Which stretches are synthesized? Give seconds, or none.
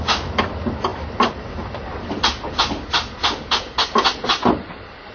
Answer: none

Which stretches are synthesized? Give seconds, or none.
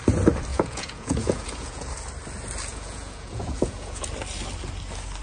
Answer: 0.5-1.9 (vocoder, Vocos); 2.7-4.1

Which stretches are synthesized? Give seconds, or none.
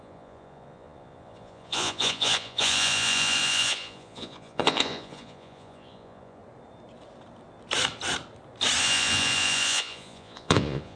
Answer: 0.0-6.4 (vocoder, Vocos); 8.8-11.0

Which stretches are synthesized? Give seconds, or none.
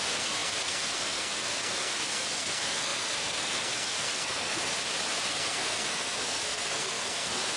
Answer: 0.0-4.7 (codec, SNAC); 5.3-7.6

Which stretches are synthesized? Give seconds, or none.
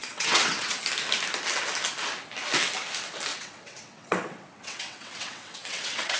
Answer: 0.0-0.8 (vocoder, WaveNeXt); 3.3-6.2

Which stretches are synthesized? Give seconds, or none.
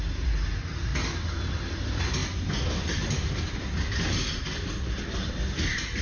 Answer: none